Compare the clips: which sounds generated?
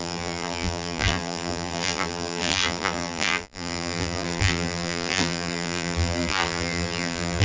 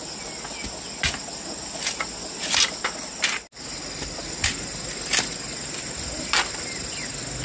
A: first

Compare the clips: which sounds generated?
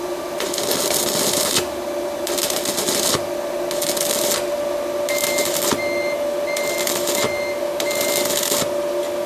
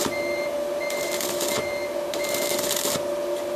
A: second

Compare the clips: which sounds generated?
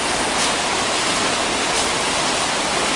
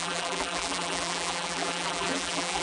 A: second